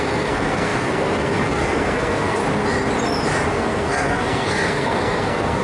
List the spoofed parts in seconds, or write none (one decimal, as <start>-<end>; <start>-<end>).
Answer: 0.0-2.4; 3.5-5.6